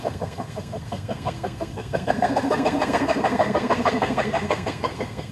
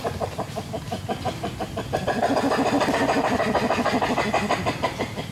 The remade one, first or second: first